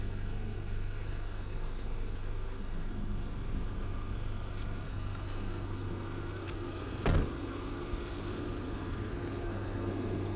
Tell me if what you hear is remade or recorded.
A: remade